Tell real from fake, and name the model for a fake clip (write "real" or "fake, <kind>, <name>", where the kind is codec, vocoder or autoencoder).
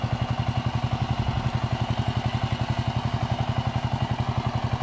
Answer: real